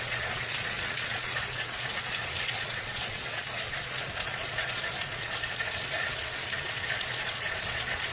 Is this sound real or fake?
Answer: fake